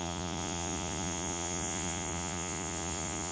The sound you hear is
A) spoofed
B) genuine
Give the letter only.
A